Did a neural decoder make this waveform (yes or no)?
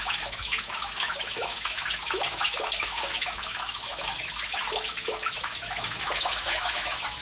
yes